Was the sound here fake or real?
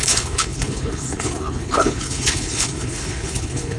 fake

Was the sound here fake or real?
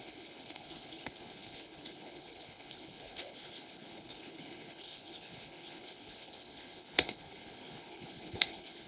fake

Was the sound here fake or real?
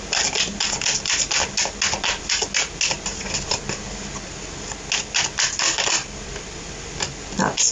real